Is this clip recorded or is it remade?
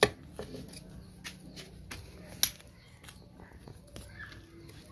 recorded